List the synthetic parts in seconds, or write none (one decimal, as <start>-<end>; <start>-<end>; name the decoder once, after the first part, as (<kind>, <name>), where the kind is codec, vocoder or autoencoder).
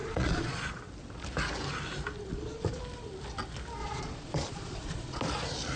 0.0-0.8 (vocoder, Vocos); 2.3-2.8; 3.8-5.2